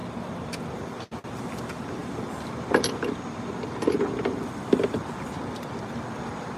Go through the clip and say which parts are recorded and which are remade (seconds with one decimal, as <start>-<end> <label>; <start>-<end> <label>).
0.0-6.6 recorded